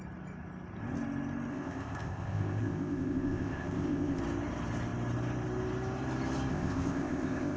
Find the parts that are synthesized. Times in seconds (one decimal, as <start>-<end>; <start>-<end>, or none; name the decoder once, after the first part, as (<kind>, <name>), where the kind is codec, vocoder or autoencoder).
1.5-4.2 (codec, ZipCodec); 6.5-7.6